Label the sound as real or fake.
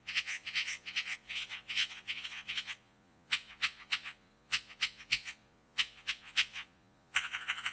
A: fake